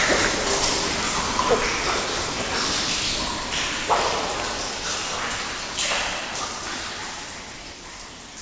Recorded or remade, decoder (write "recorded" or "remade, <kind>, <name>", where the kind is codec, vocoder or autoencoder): recorded